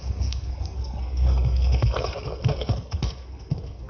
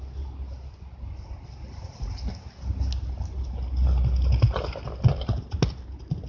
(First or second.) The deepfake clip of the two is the first